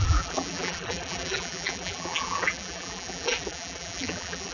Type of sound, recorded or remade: remade